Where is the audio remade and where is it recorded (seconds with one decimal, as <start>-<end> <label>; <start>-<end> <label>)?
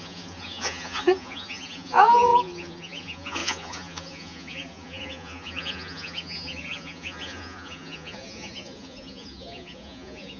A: 0.0-10.4 remade